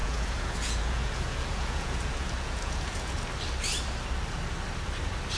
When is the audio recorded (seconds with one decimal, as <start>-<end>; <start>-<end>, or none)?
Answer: 3.2-5.4